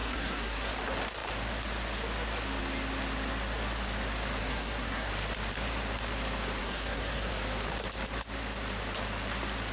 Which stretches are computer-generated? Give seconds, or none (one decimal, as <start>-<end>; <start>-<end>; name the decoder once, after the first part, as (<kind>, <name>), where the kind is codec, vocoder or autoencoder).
0.0-0.7 (codec, SNAC); 4.4-5.1; 6.6-7.3